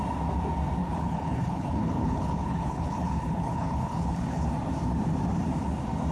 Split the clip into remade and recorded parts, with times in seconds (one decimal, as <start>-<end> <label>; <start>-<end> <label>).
0.0-0.8 recorded; 0.8-4.5 remade; 4.5-6.1 recorded